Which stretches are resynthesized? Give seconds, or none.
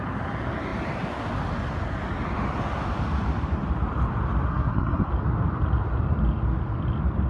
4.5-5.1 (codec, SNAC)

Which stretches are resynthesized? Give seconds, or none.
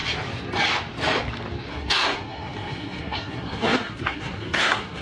1.7-5.0 (codec, SNAC)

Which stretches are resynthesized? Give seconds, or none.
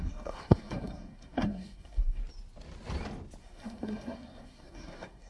0.0-2.2 (codec, SNAC); 3.4-5.3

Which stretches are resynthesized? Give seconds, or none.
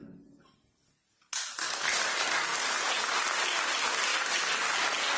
none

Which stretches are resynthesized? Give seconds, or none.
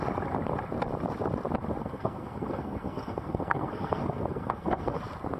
1.8-5.0 (codec, SNAC)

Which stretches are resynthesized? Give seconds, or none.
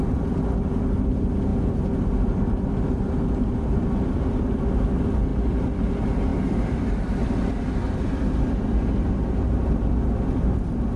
none